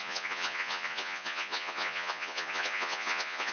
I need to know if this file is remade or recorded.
remade